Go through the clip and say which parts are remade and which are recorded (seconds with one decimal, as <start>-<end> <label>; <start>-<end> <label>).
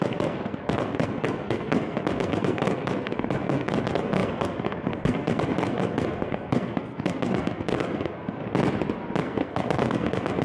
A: 0.0-8.4 remade; 8.4-9.2 recorded; 9.2-10.4 remade